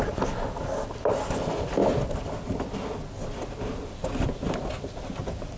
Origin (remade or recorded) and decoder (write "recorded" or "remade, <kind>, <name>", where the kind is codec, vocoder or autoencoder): recorded